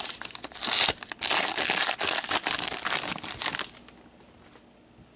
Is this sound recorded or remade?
recorded